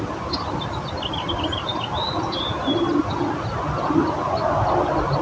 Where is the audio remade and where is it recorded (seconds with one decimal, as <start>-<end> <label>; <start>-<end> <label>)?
0.0-5.2 recorded